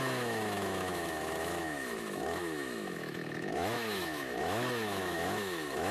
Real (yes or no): no